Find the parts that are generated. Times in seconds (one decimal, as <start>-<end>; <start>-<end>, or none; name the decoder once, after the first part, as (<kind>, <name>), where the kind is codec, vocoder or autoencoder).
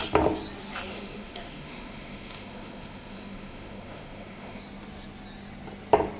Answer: 0.9-4.6 (autoencoder, DAC-VAE)